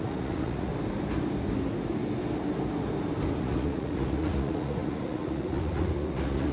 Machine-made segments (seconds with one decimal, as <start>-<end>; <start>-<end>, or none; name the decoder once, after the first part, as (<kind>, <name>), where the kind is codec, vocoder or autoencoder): 0.0-0.7 (vocoder, Vocos); 3.4-6.5